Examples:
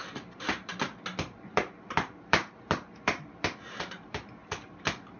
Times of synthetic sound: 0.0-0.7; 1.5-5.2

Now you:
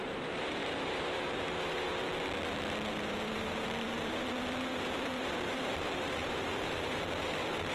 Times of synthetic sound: 0.0-2.1; 2.9-7.7

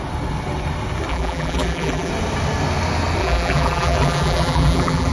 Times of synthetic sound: 1.1-2.1; 3.2-5.1

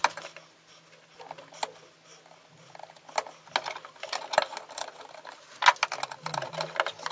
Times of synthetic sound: none